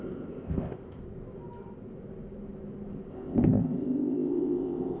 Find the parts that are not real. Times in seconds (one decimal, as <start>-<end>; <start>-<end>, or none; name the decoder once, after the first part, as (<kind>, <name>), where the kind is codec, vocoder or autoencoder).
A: 0.0-1.0 (codec, ZipCodec); 3.1-5.0